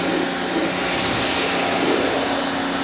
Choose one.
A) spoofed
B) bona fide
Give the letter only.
B